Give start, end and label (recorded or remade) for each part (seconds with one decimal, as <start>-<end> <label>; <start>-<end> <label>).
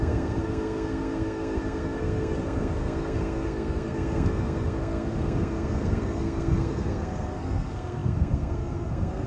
0.0-9.3 remade